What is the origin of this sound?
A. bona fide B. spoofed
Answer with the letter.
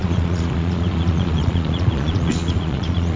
B